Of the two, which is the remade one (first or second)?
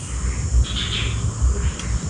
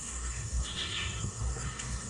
second